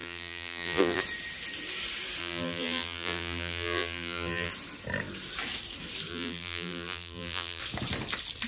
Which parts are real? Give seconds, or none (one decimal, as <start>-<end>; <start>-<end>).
1.0-2.2; 4.5-6.1; 7.6-8.5